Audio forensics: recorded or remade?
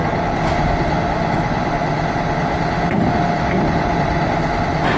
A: recorded